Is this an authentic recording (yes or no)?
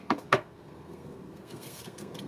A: no